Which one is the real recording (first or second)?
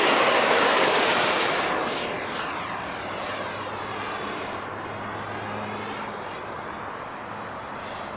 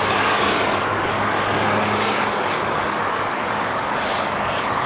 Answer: first